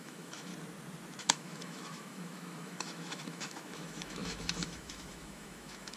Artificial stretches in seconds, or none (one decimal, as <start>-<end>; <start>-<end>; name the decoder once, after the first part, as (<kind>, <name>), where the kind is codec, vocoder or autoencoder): 0.0-0.5 (autoencoder, DAC-VAE); 1.2-6.0